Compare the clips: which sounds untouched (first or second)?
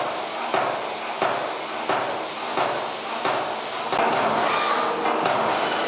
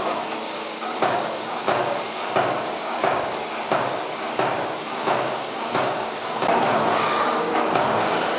first